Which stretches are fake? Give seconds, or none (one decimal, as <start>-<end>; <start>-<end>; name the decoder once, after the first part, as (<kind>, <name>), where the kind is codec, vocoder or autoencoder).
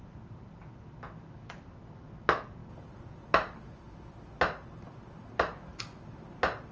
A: none